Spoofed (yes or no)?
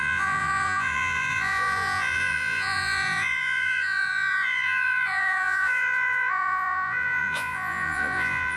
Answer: yes